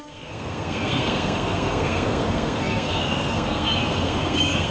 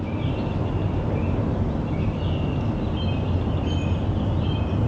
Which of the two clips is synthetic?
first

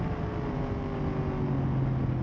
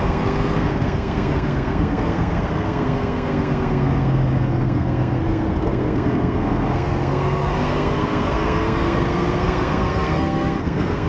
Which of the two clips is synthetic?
second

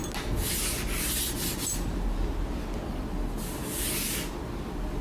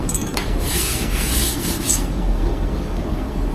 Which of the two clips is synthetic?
second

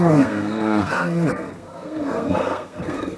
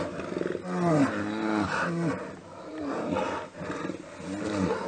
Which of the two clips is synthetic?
first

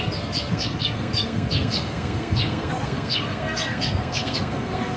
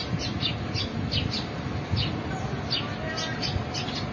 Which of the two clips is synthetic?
first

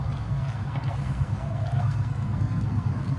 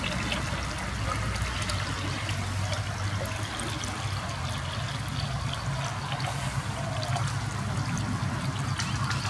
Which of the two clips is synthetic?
first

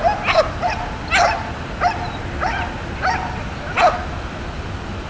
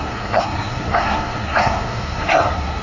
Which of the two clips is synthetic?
second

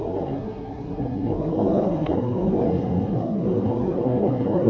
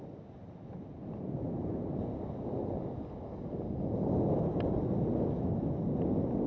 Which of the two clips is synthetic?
first